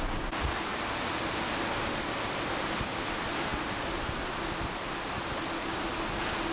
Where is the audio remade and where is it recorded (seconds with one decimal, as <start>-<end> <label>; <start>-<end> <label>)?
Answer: 0.0-6.5 recorded